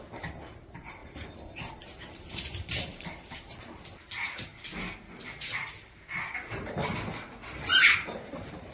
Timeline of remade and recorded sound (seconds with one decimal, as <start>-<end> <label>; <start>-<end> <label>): 0.0-4.5 remade; 4.5-7.6 recorded; 7.6-8.7 remade